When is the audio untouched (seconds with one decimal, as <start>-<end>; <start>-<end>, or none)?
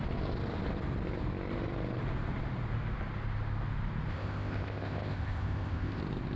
0.0-4.1; 6.0-6.4